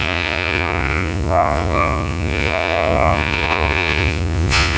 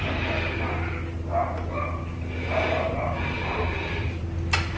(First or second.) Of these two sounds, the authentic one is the second